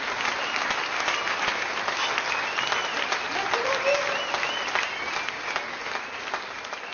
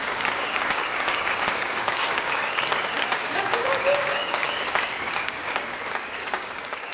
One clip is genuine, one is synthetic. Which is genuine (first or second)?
first